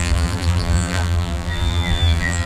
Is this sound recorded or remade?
remade